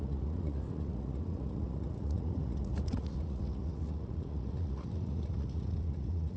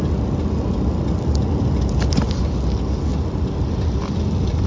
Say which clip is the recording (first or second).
second